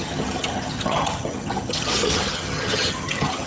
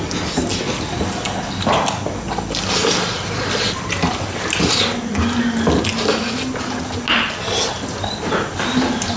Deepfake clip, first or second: first